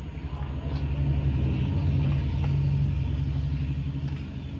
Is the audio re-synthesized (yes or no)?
no